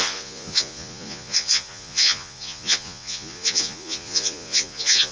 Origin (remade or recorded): remade